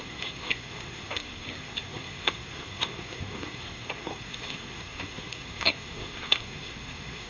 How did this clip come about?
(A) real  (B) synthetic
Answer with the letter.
B